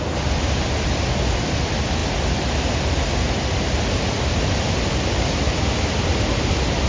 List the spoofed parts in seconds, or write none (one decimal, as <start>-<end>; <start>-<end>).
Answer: none